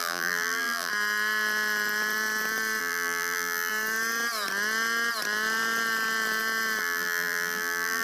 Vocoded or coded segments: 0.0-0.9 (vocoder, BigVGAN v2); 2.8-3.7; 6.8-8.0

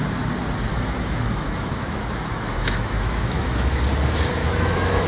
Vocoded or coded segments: 0.7-3.8 (autoencoder, DAC-VAE); 4.4-5.1

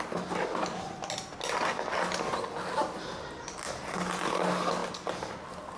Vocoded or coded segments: none

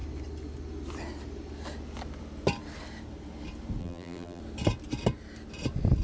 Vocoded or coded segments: 3.8-4.4 (vocoder, BigVGAN v2)

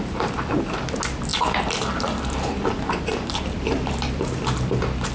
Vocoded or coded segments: 1.3-4.4 (vocoder, BigVGAN v2)